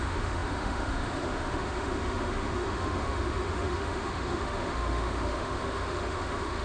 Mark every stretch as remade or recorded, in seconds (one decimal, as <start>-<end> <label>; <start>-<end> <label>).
0.0-6.6 remade